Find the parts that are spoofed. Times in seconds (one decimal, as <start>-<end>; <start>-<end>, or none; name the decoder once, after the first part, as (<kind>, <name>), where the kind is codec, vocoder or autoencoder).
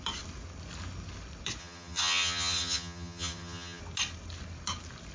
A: 1.6-3.8 (vocoder, HiFi-GAN)